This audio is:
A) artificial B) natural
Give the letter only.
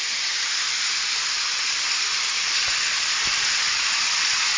B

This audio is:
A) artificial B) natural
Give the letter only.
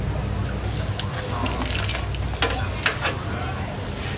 B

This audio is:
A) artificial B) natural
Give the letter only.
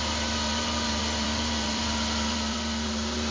A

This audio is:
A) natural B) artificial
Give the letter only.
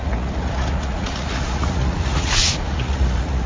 B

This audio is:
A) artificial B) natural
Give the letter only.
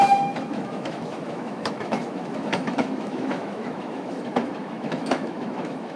A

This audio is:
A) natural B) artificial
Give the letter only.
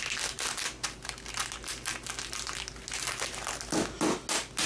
A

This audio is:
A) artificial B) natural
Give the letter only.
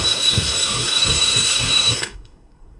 A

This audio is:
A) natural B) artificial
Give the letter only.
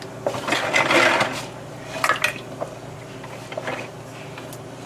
A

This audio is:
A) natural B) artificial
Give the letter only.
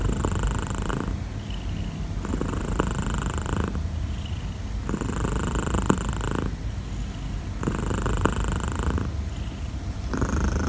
A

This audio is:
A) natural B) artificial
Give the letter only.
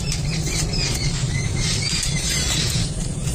B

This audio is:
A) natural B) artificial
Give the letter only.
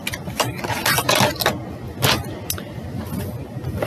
A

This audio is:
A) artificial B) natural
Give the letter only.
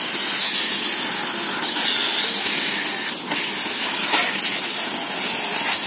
B